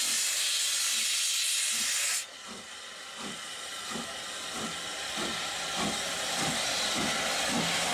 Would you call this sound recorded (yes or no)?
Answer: yes